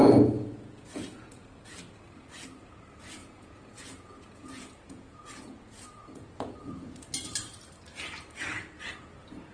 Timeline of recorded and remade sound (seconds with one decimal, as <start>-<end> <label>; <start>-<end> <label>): 0.0-1.8 remade; 1.8-3.2 recorded; 3.2-6.9 remade; 6.9-9.5 recorded

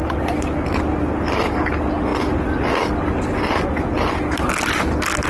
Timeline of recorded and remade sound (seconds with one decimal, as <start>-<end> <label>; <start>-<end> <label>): 0.0-5.3 recorded

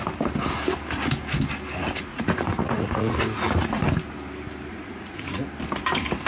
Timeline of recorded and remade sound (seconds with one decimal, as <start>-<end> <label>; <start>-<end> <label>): 0.0-2.1 recorded; 2.1-3.2 remade; 3.2-4.7 recorded; 4.7-5.4 remade; 5.4-6.3 recorded

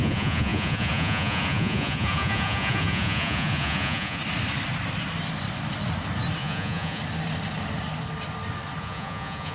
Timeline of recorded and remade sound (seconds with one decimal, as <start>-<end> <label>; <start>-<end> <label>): 0.0-4.2 remade; 4.2-6.4 recorded; 6.4-7.0 remade; 7.0-8.8 recorded; 8.8-9.5 remade

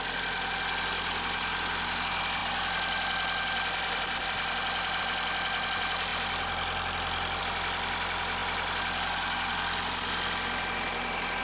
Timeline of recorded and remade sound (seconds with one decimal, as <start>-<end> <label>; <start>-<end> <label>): 0.0-11.4 recorded

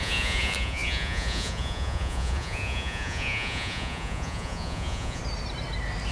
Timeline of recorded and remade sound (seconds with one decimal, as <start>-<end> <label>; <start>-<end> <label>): 0.0-5.2 remade; 5.2-6.1 recorded

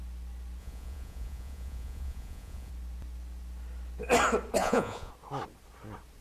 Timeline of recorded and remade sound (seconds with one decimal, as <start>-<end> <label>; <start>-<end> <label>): 0.0-0.6 recorded; 0.6-2.7 remade; 2.7-4.6 recorded; 4.6-5.1 remade; 5.1-6.2 recorded